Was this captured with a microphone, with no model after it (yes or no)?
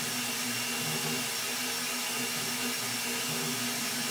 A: yes